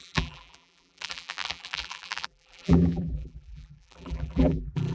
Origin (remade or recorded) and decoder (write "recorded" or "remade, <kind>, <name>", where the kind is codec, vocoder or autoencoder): remade, vocoder, BigVGAN v2